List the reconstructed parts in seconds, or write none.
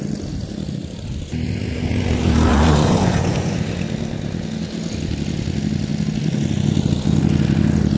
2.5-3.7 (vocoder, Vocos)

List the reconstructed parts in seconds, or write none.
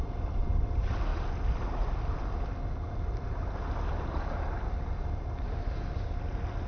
none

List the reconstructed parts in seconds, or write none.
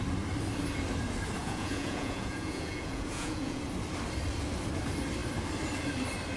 1.4-3.6 (vocoder, Vocos)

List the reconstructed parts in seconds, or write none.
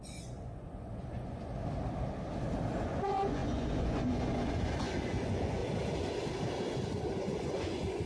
0.0-1.6 (vocoder, Vocos); 2.8-5.6; 7.2-8.1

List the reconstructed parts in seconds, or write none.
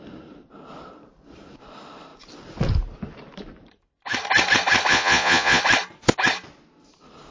4.9-5.6 (vocoder, Vocos)